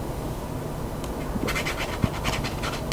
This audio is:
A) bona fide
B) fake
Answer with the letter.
A